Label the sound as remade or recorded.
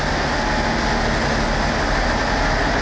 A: recorded